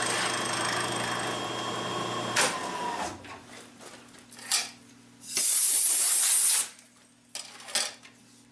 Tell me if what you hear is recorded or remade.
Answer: recorded